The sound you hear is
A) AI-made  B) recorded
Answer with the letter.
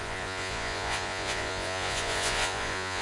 A